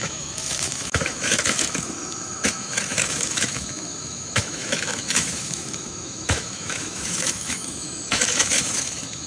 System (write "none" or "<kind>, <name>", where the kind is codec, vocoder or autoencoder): autoencoder, DAC-VAE